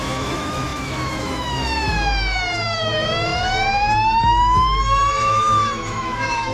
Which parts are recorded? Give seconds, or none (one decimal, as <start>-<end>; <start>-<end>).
none